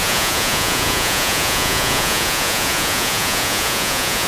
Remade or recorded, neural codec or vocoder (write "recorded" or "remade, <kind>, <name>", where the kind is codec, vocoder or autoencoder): remade, vocoder, Vocos